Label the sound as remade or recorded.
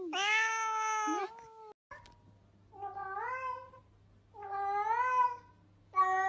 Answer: recorded